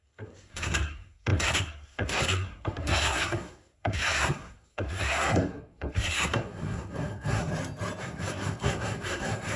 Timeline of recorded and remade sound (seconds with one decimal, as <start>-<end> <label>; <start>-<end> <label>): 0.0-7.5 remade; 7.5-8.0 recorded; 8.0-9.6 remade